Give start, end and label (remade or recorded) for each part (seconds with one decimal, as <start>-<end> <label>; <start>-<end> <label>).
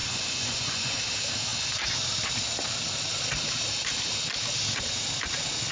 0.0-1.0 remade; 1.0-5.7 recorded